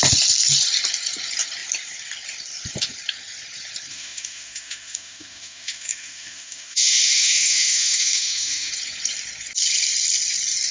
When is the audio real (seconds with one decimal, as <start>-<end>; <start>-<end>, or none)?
0.0-3.9; 8.7-10.7

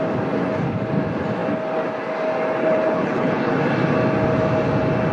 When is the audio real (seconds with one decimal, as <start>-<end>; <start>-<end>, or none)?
0.0-2.6; 3.6-5.1